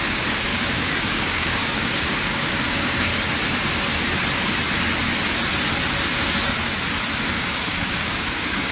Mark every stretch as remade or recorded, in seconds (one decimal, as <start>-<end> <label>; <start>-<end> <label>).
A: 0.0-3.1 remade; 3.1-7.2 recorded; 7.2-8.7 remade